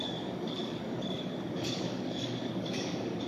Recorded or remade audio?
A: remade